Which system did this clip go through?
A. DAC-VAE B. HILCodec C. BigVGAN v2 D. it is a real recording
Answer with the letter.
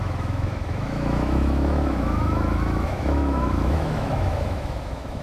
A